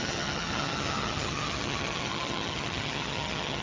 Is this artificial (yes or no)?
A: yes